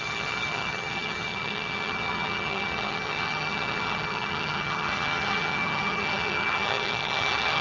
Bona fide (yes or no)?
no